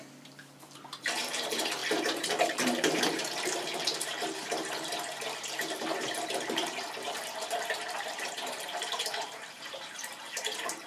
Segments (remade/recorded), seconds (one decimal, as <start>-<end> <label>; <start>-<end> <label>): 0.0-10.9 remade